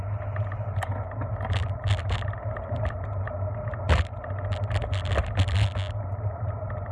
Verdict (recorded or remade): recorded